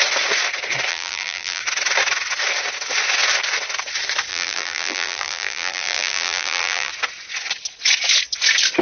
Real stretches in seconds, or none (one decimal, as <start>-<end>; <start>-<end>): 0.0-0.9; 1.6-4.3; 6.9-8.8